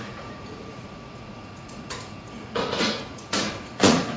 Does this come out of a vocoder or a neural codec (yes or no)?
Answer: yes